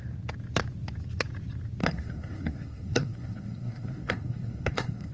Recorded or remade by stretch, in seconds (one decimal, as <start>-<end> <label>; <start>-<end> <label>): 0.0-1.8 recorded; 1.8-5.1 remade